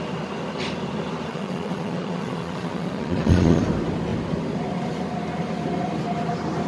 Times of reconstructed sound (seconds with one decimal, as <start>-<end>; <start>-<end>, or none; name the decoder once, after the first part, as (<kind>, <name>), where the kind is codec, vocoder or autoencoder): 1.3-3.6 (vocoder, Vocos)